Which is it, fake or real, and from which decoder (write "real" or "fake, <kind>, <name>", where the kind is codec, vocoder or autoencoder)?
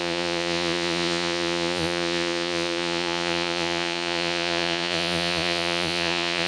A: fake, vocoder, Vocos